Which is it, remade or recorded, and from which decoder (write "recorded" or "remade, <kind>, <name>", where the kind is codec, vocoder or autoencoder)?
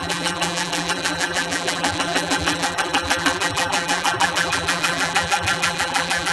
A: remade, vocoder, BigVGAN v2